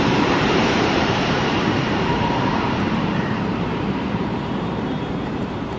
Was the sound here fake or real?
fake